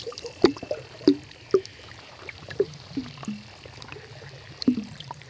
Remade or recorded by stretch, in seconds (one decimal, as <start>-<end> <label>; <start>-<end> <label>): 0.0-3.0 remade; 3.0-4.6 recorded; 4.6-5.3 remade